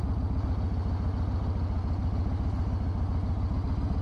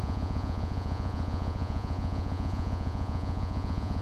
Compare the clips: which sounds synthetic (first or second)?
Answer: second